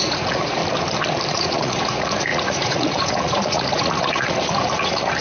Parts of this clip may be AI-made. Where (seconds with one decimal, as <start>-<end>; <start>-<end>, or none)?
0.0-0.6; 1.3-5.2